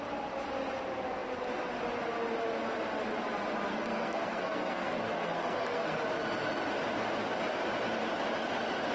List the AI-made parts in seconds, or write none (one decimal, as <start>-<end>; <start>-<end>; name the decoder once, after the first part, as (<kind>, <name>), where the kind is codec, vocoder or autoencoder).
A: 3.7-6.0 (codec, SNAC)